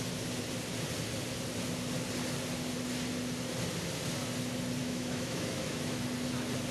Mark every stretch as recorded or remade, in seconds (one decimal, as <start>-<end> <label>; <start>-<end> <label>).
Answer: 0.0-4.8 recorded; 4.8-6.0 remade; 6.0-6.7 recorded